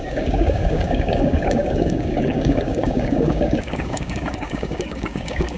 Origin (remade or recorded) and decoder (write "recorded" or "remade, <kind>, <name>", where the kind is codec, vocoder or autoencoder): remade, codec, DAC